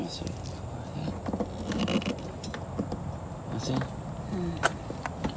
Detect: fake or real real